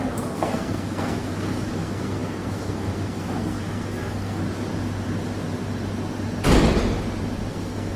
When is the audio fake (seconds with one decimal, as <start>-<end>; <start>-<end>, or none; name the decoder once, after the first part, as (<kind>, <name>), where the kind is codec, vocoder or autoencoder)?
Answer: 0.0-4.4 (codec, SNAC); 7.5-8.0